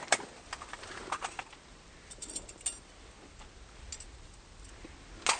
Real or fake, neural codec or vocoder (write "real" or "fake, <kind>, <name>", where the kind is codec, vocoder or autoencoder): real